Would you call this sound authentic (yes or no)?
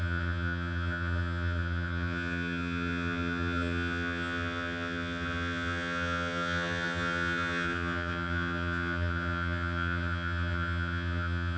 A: no